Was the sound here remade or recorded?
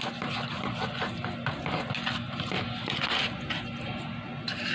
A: recorded